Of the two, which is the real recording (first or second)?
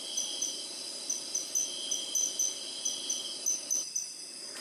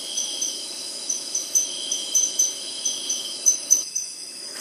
first